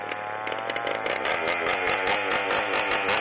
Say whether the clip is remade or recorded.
recorded